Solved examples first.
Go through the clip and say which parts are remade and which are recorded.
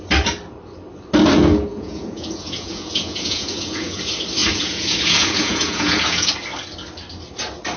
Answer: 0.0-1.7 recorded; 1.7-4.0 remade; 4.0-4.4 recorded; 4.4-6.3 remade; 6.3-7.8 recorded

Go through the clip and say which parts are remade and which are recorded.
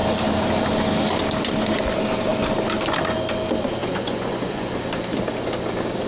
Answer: 0.0-3.8 recorded; 3.8-4.7 remade; 4.7-6.1 recorded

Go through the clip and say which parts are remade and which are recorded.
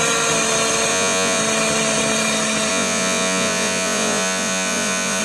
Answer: 0.0-0.9 recorded; 0.9-1.4 remade; 1.4-2.7 recorded; 2.7-5.2 remade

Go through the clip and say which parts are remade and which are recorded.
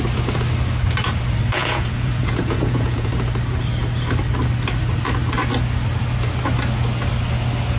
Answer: 0.0-1.6 recorded; 1.6-3.1 remade; 3.1-7.8 recorded